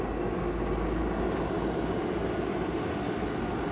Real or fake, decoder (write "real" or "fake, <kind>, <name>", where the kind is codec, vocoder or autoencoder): real